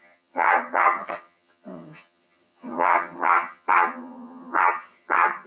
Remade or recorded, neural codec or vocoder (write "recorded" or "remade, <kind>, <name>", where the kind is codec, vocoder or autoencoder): remade, vocoder, HiFi-GAN